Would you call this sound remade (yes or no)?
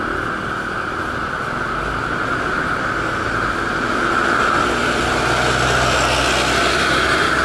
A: no